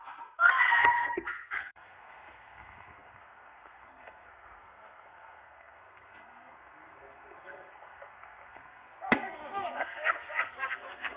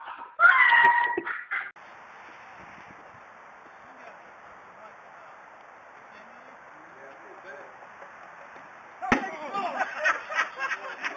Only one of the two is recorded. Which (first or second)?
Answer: second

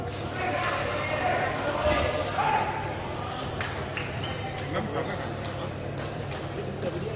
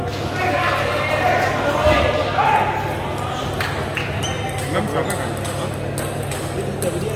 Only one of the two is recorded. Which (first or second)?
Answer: second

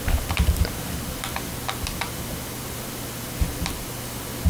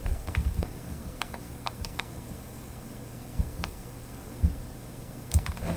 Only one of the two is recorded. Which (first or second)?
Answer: first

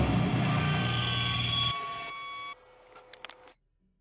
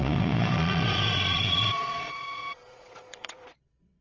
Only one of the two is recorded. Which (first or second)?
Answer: first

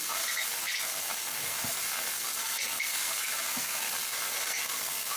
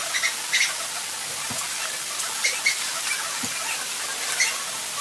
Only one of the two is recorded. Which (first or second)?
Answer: second